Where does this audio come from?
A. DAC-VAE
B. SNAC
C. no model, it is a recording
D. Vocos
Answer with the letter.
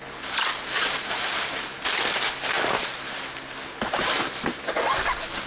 C